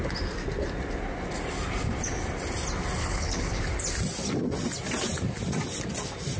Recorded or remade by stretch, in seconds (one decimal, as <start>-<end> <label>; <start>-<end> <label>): 0.0-3.0 recorded; 3.0-3.6 remade; 3.6-6.4 recorded